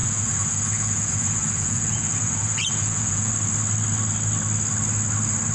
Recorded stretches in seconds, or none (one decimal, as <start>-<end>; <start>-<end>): 3.3-5.5